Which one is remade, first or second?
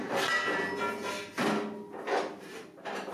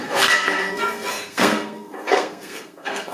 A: second